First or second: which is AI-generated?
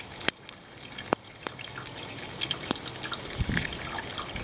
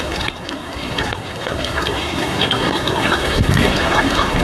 second